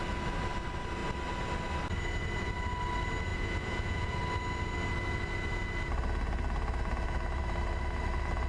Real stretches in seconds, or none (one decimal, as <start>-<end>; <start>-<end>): 0.0-3.3; 4.2-8.5